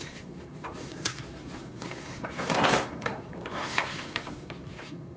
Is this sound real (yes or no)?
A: no